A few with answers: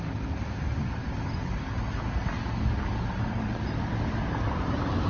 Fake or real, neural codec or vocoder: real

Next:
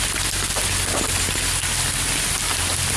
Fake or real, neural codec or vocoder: real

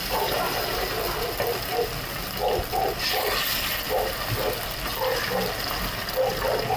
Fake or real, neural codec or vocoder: real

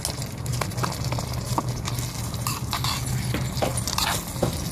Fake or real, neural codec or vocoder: real